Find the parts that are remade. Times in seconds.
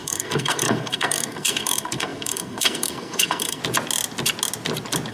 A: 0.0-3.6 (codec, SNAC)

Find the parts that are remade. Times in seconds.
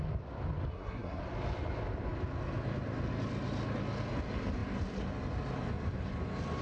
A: 0.7-1.2 (codec, SNAC)